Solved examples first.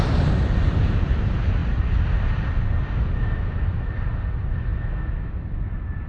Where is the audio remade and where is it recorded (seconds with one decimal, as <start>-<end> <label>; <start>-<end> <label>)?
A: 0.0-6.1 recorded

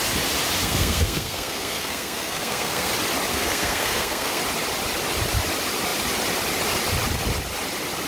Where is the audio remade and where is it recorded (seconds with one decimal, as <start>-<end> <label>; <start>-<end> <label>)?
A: 0.0-0.6 recorded; 0.6-2.9 remade; 2.9-3.3 recorded; 3.3-4.4 remade; 4.4-8.1 recorded

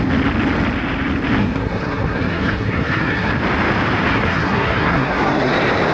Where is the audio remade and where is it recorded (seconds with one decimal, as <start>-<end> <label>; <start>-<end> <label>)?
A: 0.0-1.4 recorded; 1.4-3.3 remade; 3.3-4.1 recorded; 4.1-5.5 remade; 5.5-5.9 recorded

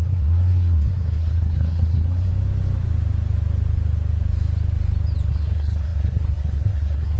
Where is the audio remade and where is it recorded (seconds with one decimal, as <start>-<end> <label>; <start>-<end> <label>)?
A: 0.0-2.3 remade; 2.3-5.3 recorded; 5.3-7.2 remade

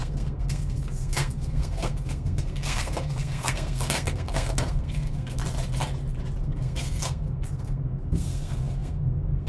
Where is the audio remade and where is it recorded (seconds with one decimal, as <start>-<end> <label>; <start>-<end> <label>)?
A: 0.0-5.4 remade; 5.4-6.4 recorded; 6.4-9.5 remade